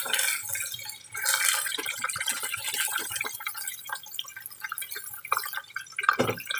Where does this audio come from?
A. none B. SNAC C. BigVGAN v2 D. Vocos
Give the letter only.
A